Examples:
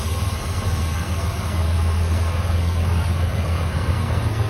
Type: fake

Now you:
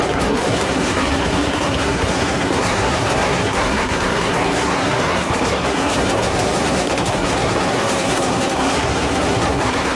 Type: fake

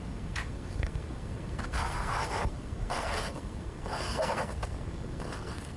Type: fake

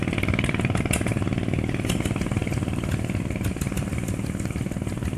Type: real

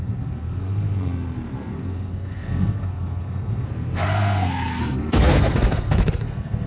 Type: fake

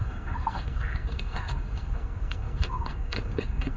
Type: fake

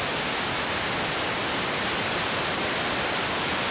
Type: real